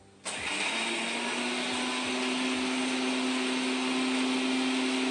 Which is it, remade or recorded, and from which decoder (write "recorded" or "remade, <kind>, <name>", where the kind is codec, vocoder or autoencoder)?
recorded